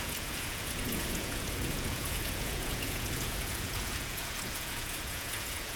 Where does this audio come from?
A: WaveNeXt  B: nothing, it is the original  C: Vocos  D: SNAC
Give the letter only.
C